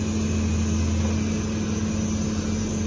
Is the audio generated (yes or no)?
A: no